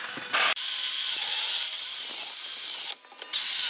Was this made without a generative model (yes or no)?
yes